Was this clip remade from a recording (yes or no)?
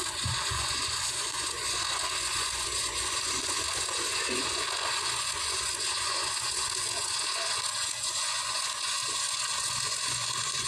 yes